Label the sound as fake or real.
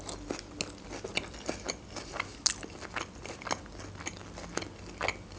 real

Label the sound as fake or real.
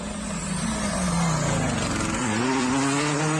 real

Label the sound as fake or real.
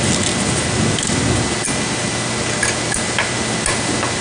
real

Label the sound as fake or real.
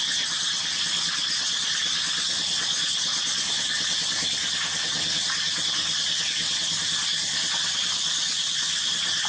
real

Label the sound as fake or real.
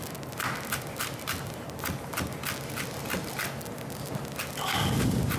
real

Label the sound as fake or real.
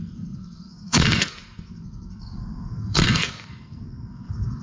fake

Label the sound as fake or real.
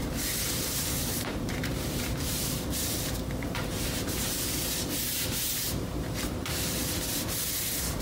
fake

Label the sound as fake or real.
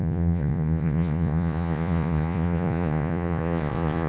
fake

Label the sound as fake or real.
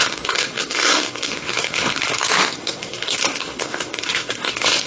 fake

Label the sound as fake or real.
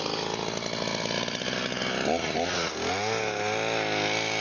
real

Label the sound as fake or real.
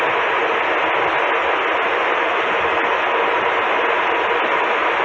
real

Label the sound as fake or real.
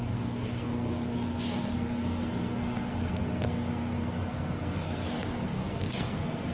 fake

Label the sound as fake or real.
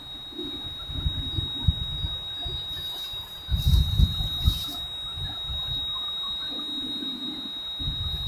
real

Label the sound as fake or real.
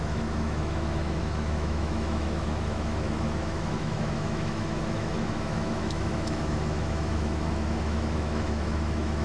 fake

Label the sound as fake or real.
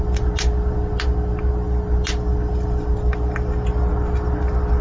real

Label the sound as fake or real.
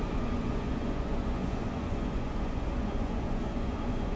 fake